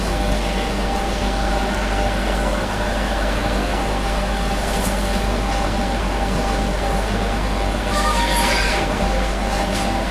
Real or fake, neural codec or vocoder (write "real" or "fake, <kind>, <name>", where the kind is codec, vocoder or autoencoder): fake, codec, SNAC